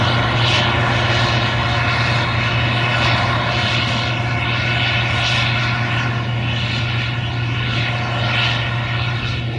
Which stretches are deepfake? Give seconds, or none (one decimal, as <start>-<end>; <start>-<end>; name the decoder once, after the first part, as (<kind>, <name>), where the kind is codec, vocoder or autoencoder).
none